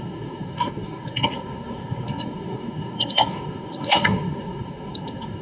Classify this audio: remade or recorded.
remade